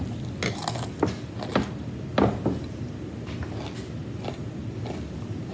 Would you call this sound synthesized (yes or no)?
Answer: no